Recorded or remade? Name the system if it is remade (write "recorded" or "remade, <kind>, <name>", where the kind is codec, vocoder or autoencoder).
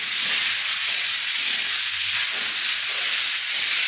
recorded